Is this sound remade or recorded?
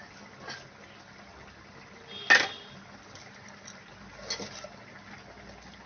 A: recorded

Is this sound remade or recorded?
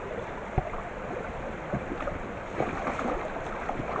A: recorded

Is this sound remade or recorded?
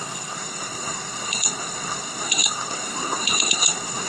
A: remade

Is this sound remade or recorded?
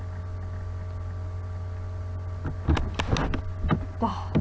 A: recorded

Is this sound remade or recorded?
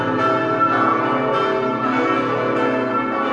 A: recorded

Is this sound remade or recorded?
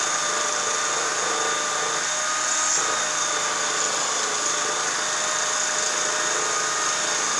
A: recorded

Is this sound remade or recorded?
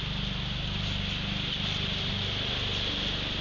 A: recorded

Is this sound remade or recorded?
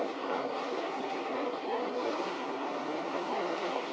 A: remade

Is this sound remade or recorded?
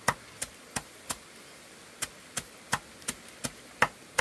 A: recorded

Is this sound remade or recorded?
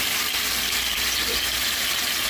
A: recorded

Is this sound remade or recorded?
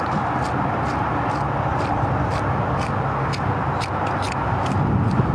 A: recorded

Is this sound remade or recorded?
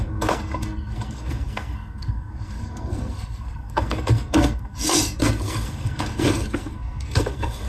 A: remade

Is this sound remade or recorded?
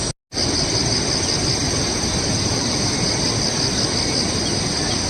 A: recorded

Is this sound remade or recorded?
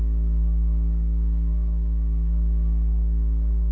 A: remade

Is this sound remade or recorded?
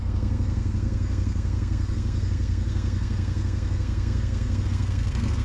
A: remade